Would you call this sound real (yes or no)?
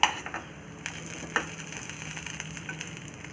yes